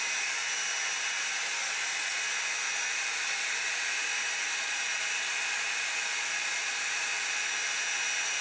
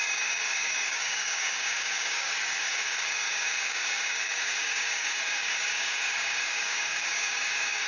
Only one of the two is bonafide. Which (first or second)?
first